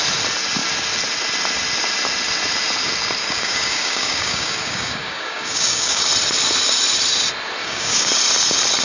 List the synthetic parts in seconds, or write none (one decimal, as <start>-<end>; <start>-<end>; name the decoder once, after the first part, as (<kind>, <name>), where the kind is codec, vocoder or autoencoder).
3.2-6.1 (codec, DAC); 7.6-8.1